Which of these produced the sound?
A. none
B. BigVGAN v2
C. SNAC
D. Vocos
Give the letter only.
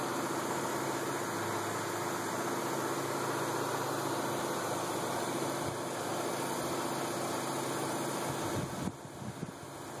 A